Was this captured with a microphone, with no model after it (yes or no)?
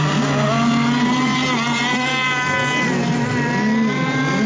yes